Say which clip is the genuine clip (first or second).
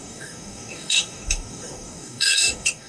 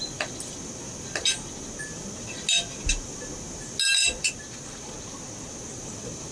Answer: second